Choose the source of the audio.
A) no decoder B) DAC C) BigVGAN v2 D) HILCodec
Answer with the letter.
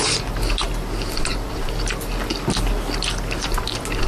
A